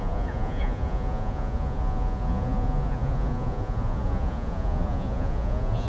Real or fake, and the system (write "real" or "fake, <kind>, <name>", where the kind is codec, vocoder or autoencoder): fake, vocoder, Vocos